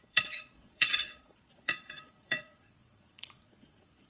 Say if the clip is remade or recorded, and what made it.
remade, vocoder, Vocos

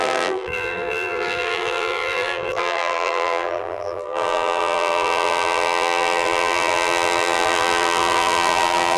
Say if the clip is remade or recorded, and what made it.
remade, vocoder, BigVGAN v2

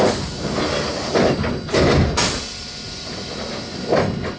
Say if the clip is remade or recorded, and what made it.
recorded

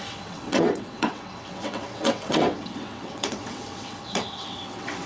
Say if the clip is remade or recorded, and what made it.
remade, vocoder, WaveNeXt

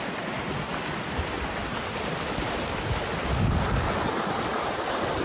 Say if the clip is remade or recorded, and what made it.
recorded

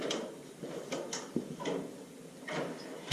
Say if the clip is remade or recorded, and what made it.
remade, vocoder, BigVGAN v2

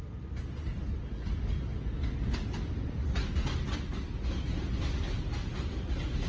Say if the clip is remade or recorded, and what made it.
recorded